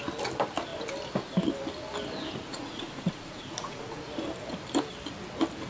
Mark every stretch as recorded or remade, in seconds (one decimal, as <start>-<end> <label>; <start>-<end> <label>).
0.0-2.5 recorded; 2.5-4.0 remade; 4.0-5.7 recorded